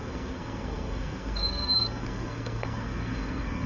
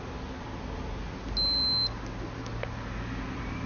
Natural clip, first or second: second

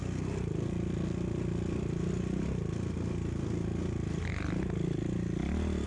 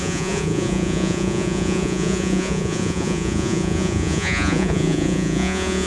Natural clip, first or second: first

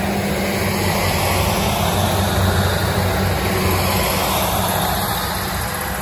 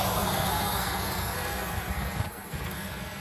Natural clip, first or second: first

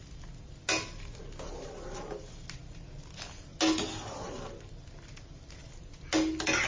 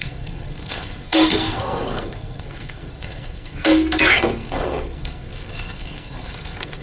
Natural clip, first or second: first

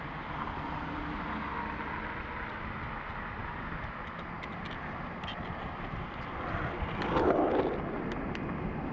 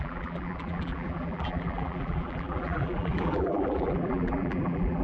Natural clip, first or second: first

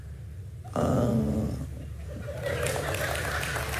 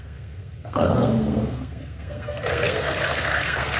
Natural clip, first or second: first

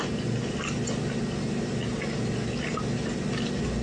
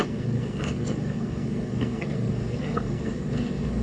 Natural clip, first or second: first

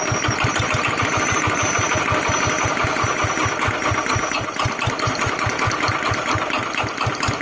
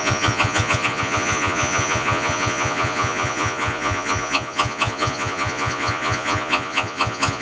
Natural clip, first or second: first